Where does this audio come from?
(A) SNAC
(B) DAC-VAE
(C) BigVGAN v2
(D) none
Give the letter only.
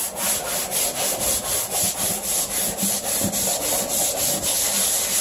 D